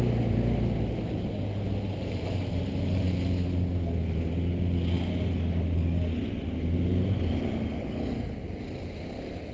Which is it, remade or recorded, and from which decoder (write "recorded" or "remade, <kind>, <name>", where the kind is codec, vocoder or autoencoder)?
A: recorded